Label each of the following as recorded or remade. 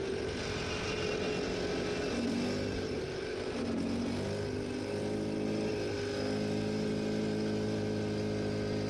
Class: recorded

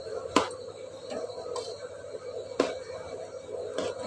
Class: recorded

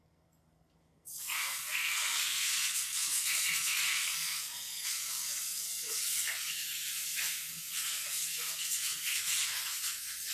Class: remade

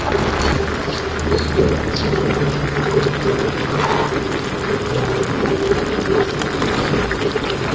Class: recorded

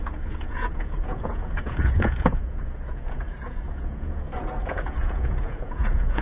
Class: remade